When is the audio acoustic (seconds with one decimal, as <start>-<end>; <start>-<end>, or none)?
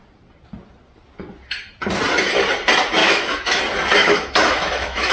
0.0-3.0; 3.6-4.0